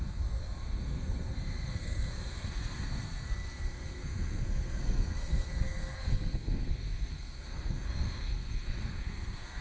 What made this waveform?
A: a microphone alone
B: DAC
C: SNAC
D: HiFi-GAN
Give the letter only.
C